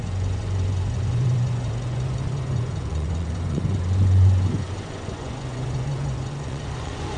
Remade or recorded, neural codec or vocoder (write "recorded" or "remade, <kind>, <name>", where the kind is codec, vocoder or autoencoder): remade, vocoder, Vocos